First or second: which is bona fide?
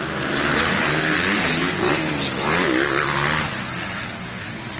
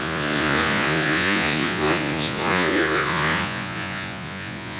first